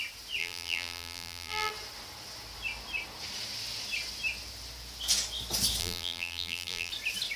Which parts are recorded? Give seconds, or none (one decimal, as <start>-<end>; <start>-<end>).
0.0-0.4; 1.7-5.8; 6.9-7.4